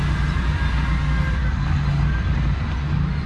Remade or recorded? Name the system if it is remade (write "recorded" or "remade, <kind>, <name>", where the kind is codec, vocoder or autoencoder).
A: recorded